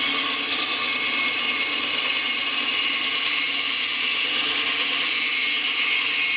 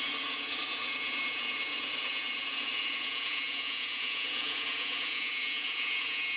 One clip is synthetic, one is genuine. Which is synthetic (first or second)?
second